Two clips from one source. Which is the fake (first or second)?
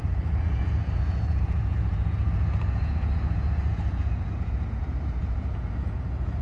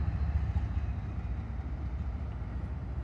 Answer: first